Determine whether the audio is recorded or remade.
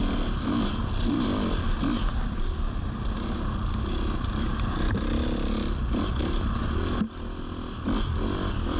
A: recorded